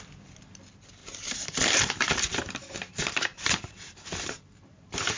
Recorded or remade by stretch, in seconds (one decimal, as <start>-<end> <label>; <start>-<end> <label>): 0.0-1.0 recorded; 1.0-2.2 remade; 2.2-3.3 recorded; 3.3-5.2 remade